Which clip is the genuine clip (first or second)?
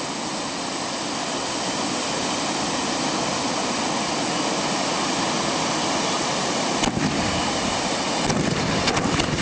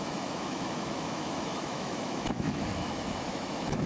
first